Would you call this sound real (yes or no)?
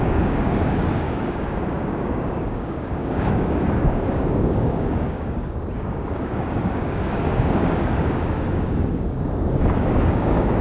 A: no